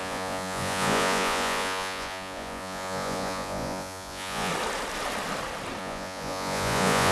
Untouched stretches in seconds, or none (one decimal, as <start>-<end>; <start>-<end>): 4.5-5.8